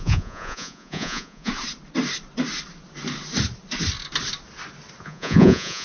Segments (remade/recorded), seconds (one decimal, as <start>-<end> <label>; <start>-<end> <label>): 0.0-1.5 remade; 1.5-5.0 recorded; 5.0-5.8 remade